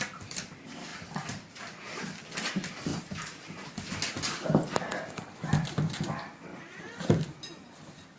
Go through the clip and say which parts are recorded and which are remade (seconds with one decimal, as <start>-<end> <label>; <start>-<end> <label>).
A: 0.0-0.9 recorded; 0.9-1.6 remade; 1.6-2.9 recorded; 2.9-3.7 remade; 3.7-6.5 recorded; 6.5-7.7 remade; 7.7-8.2 recorded